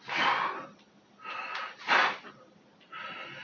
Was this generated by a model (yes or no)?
no